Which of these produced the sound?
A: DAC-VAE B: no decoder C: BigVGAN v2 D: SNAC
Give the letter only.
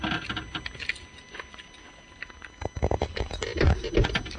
B